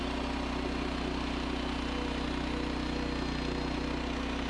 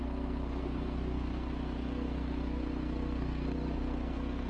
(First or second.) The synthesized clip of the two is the second